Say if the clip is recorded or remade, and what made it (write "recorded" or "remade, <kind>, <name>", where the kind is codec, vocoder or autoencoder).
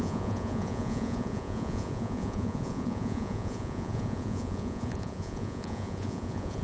remade, vocoder, Vocos